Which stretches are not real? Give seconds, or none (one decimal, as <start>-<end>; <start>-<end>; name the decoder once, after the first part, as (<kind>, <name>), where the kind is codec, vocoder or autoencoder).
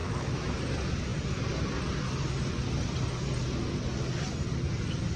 0.0-0.6 (autoencoder, DAC-VAE)